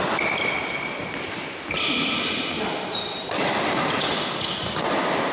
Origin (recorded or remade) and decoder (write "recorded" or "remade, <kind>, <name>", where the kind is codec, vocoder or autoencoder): recorded